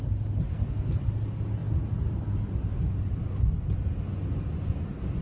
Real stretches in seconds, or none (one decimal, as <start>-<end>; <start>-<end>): 0.0-0.5; 1.0-5.2